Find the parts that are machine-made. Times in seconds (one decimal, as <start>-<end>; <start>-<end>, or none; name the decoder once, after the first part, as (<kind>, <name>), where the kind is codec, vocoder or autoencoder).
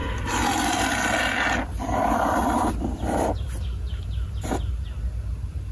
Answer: 3.9-4.5 (vocoder, BigVGAN v2)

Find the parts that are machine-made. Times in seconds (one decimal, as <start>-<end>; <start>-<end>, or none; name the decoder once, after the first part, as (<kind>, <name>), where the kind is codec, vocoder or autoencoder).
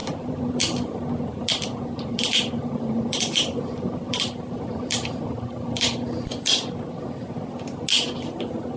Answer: 0.0-0.5 (vocoder, BigVGAN v2); 2.6-5.9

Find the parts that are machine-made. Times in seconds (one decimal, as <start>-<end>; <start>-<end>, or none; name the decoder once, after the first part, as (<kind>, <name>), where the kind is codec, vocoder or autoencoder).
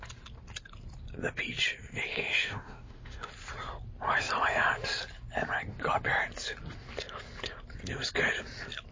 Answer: 2.1-3.3 (autoencoder, DAC-VAE)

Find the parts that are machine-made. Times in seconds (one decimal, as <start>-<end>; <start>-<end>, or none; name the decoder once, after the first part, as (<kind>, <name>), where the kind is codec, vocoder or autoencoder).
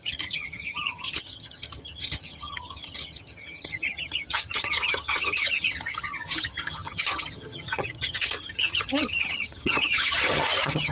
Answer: 0.0-10.9 (vocoder, HiFi-GAN)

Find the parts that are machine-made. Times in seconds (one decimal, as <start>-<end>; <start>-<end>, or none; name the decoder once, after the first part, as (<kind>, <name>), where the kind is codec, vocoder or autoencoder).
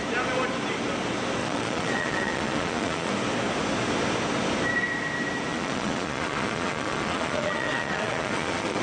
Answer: 1.4-3.1 (vocoder, Vocos); 5.5-8.8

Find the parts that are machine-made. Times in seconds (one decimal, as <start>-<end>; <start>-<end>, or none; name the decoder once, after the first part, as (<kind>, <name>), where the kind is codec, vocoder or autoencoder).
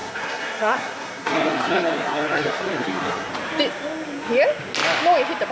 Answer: 0.0-3.3 (codec, SNAC)